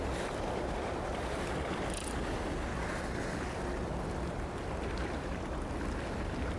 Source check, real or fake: real